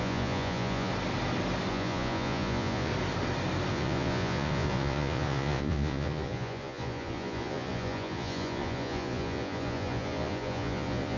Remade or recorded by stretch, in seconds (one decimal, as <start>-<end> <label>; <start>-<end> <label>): 0.0-0.9 remade; 0.9-1.7 recorded; 1.7-2.9 remade; 2.9-3.7 recorded; 3.7-11.2 remade